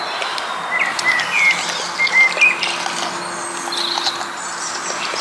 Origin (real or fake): real